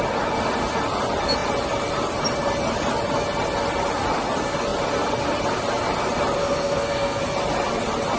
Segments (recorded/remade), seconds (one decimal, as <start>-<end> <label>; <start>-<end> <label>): 0.0-6.4 recorded; 6.4-7.2 remade; 7.2-8.2 recorded